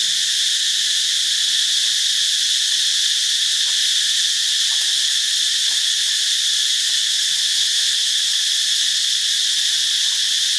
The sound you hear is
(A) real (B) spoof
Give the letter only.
A